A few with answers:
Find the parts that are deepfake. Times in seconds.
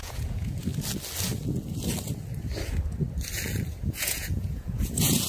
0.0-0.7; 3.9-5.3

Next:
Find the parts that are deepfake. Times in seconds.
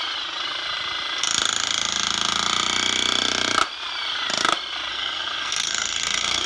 4.9-6.5